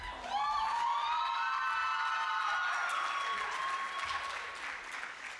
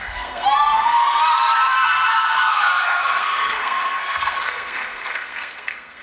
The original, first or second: first